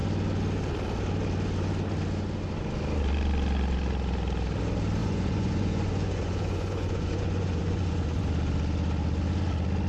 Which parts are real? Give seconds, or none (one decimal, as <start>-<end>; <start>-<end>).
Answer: 0.0-5.0; 8.3-9.9